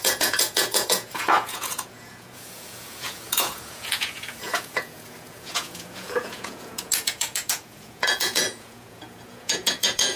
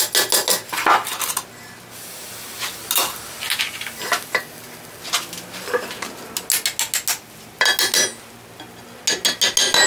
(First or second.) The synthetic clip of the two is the first